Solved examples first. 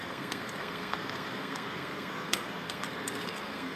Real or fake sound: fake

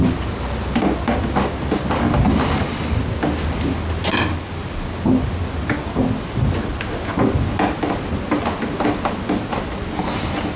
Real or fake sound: real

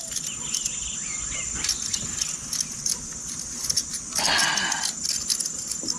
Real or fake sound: real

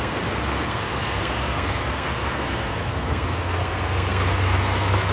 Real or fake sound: fake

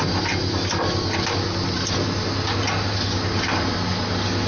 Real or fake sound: real